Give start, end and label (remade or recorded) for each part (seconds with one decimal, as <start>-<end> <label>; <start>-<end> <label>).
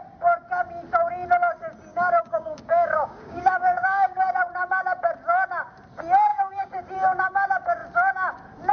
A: 0.0-1.9 recorded; 1.9-4.2 remade; 4.2-6.3 recorded; 6.3-6.8 remade; 6.8-8.7 recorded